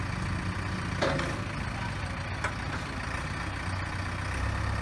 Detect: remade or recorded recorded